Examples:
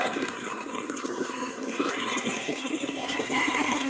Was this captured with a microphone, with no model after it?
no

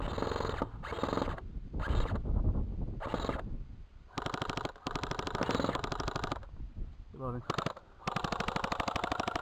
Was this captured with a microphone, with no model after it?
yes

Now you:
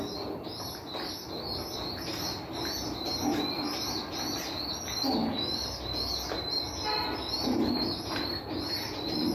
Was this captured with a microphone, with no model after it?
yes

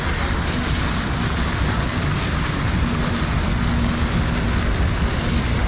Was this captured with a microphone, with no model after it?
yes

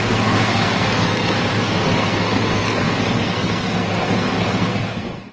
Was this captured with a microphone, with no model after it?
no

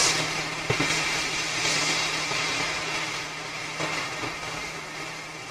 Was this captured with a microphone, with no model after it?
yes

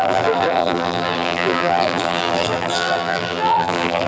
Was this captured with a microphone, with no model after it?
no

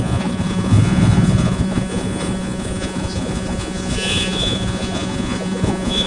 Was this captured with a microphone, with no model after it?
no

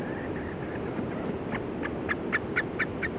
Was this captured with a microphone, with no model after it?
yes